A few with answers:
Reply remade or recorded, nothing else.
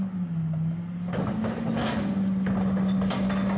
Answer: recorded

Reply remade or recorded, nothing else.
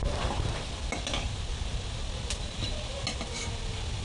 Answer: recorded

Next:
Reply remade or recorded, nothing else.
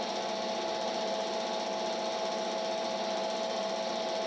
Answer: recorded